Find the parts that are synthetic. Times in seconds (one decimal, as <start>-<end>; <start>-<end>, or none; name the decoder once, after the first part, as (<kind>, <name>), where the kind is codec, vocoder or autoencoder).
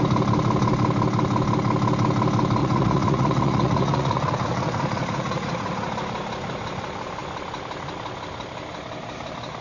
2.6-5.9 (vocoder, Vocos)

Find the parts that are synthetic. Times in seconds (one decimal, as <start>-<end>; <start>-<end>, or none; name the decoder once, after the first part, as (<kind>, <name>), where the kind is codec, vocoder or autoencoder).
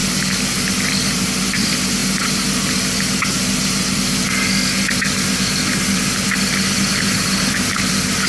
none